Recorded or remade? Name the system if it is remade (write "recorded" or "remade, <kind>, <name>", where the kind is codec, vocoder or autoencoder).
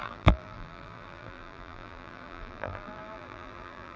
remade, vocoder, BigVGAN v2